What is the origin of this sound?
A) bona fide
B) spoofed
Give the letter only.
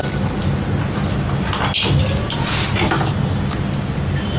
A